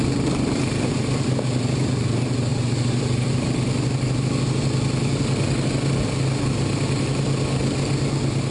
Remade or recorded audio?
recorded